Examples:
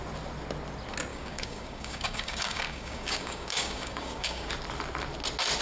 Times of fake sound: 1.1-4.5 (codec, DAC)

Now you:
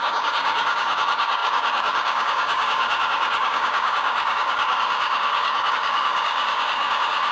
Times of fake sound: 0.0-7.3 (codec, DAC)

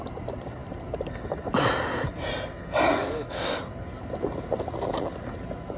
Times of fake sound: 3.0-3.6 (codec, DAC)

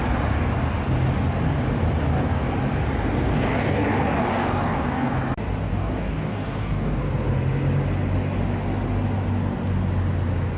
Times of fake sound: 2.0-2.5 (codec, DAC); 3.3-5.1; 5.7-7.0

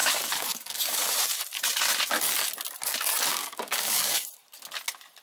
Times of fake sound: 0.0-1.1 (codec, DAC); 3.3-4.3

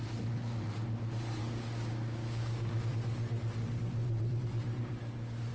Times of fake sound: 1.4-2.9 (codec, DAC)

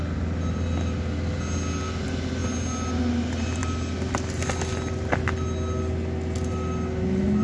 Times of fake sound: none